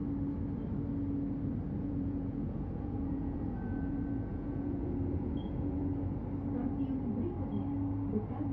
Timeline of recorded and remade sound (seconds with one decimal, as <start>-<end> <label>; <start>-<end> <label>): 0.0-1.8 recorded; 1.8-5.9 remade; 5.9-8.5 recorded